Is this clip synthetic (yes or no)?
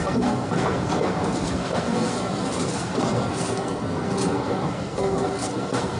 yes